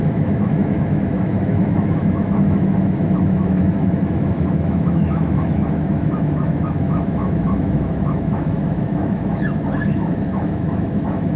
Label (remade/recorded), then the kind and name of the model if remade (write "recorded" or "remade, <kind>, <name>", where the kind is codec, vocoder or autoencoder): remade, autoencoder, DAC-VAE